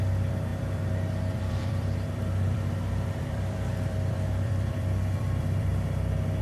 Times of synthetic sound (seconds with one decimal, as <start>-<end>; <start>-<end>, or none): 0.0-5.7